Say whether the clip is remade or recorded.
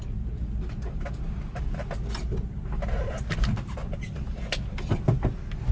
recorded